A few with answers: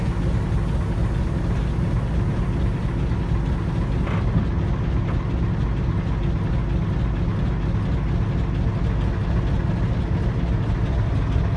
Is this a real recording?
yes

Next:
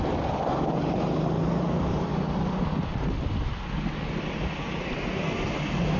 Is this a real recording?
yes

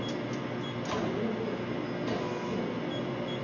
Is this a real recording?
yes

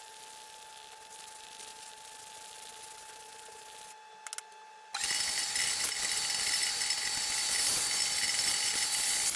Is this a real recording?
yes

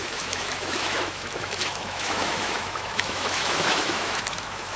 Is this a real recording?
no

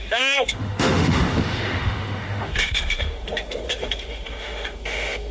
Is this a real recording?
no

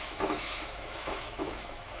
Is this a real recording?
no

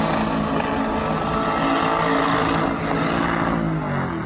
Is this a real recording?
yes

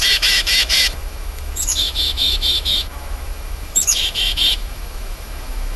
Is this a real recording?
no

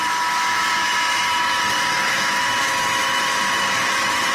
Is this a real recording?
no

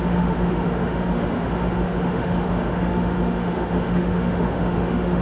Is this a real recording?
no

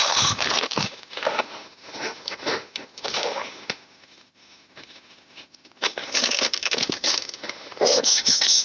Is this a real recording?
no